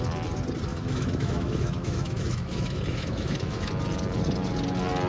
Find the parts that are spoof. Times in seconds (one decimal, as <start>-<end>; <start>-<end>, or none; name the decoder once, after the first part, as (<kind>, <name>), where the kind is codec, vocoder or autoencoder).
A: 0.7-3.7 (autoencoder, DAC-VAE)